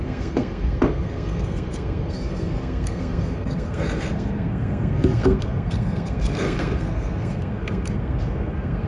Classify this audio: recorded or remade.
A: remade